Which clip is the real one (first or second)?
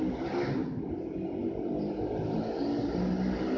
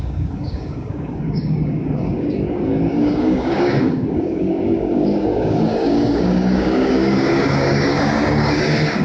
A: first